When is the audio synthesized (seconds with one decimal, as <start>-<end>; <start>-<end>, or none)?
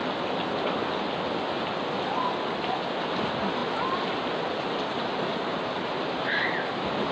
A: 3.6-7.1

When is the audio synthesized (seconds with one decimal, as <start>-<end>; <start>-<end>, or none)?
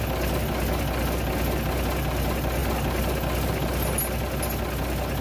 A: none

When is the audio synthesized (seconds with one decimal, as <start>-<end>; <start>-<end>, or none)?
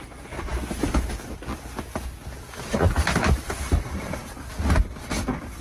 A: 0.0-0.5; 3.6-4.2; 4.8-5.6